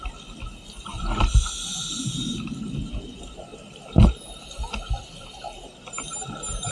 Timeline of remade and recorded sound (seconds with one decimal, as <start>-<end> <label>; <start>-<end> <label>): 0.0-6.7 recorded